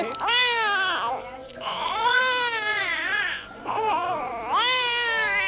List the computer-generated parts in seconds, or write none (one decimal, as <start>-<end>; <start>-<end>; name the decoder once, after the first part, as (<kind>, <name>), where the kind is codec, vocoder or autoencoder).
1.4-2.2 (vocoder, Vocos); 2.7-4.3